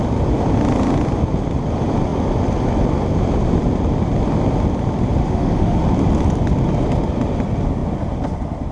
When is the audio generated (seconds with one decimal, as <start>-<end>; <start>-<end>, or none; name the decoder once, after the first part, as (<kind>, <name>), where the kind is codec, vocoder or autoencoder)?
5.2-5.8 (autoencoder, DAC-VAE)